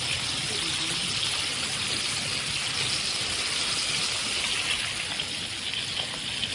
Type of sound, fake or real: real